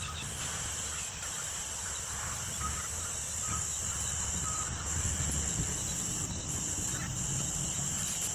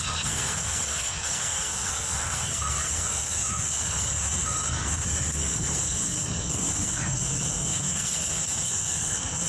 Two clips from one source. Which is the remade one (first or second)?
second